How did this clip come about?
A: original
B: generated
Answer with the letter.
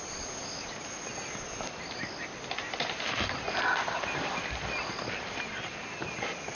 A